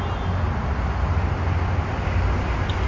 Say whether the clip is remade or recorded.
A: recorded